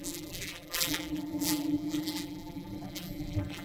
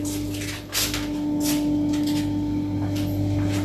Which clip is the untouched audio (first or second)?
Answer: second